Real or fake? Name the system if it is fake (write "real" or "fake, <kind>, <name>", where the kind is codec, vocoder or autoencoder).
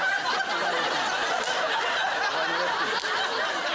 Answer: real